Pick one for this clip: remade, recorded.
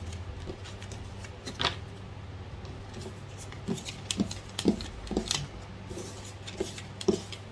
recorded